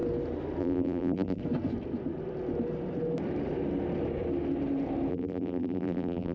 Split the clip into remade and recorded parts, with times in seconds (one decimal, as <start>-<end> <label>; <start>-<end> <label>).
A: 0.0-0.6 recorded; 0.6-1.4 remade; 1.4-5.1 recorded; 5.1-6.3 remade